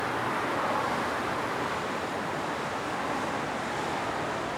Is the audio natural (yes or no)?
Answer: yes